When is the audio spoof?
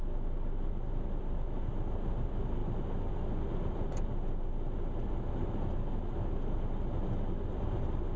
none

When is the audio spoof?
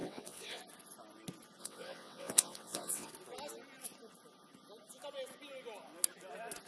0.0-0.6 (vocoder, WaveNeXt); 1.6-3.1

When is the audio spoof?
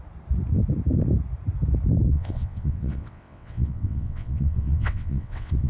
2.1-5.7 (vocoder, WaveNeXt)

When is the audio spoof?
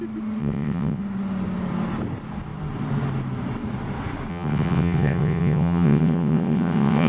0.4-1.0 (vocoder, WaveNeXt); 4.3-7.1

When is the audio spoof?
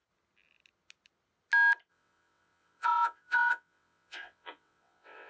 1.9-5.3 (vocoder, WaveNeXt)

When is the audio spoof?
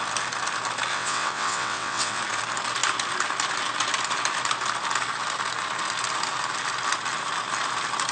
0.9-2.2 (vocoder, WaveNeXt)